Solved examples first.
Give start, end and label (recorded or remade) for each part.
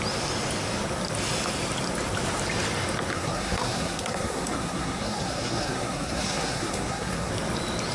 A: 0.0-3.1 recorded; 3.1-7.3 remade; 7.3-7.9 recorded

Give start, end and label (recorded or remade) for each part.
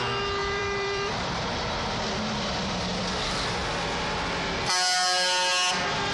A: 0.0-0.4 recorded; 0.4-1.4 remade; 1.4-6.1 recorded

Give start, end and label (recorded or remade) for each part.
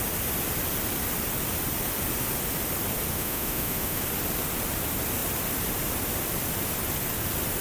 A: 0.0-3.1 recorded; 3.1-4.0 remade; 4.0-7.6 recorded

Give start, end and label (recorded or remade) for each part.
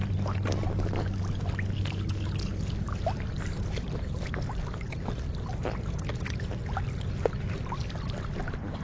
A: 0.0-8.8 recorded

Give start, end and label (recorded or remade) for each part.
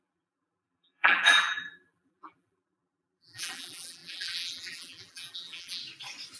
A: 0.0-5.8 remade; 5.8-6.4 recorded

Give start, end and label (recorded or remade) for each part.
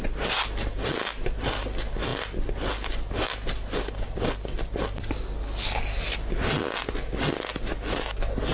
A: 0.0-8.5 recorded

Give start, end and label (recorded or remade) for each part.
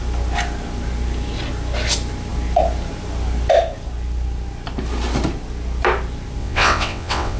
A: 0.0-6.4 recorded; 6.4-7.4 remade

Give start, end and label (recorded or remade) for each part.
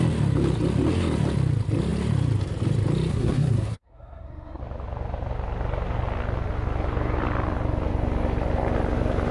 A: 0.0-3.1 recorded; 3.1-4.6 remade; 4.6-9.3 recorded